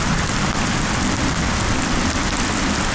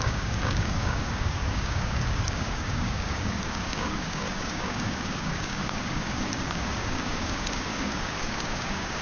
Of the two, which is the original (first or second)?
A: first